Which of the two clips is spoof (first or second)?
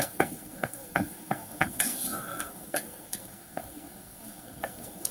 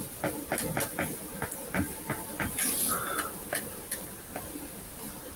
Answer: first